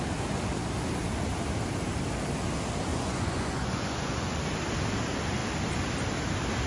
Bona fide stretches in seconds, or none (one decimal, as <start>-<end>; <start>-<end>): 0.0-2.9; 4.4-6.7